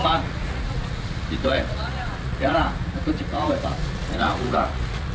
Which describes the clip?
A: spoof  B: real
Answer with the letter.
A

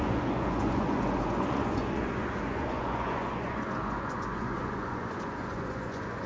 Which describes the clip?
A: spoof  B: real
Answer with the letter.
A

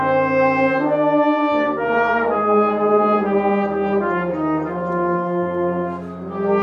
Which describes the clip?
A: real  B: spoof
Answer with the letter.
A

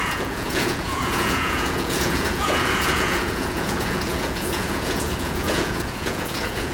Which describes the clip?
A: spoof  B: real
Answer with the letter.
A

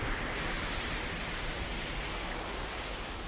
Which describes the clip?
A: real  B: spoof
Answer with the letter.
A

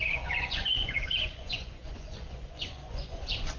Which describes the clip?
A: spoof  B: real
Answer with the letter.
A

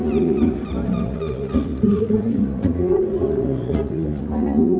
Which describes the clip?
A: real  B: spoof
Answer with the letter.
B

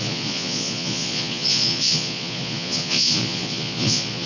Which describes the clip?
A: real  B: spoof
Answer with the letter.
B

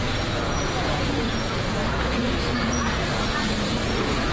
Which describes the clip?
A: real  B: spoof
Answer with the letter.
B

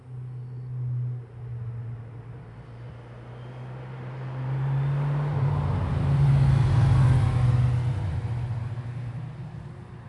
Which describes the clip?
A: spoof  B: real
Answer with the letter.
B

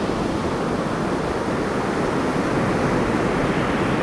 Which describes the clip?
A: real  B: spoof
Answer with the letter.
A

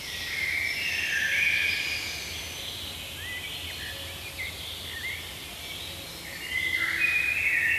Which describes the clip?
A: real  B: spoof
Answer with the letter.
A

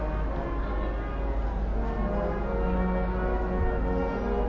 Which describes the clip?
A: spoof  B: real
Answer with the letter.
B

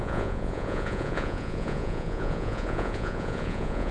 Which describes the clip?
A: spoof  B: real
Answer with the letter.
A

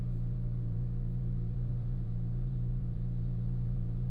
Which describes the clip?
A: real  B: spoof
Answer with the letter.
B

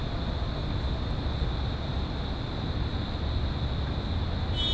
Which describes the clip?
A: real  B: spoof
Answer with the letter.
A